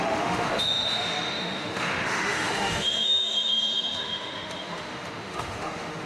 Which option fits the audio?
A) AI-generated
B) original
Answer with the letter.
A